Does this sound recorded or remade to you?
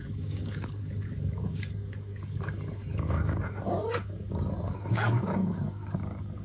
remade